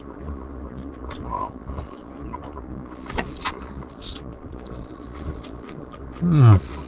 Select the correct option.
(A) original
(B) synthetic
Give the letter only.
B